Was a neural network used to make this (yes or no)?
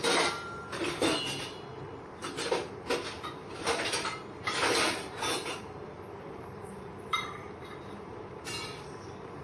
yes